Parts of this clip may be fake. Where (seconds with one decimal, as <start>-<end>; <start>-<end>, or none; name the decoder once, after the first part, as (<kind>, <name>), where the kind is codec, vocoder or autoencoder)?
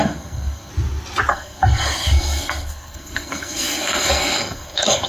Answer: 0.0-0.7 (codec, SNAC); 1.3-5.1